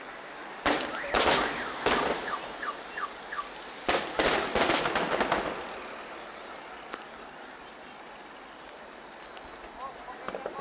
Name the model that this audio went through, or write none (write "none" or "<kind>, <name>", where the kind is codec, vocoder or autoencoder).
none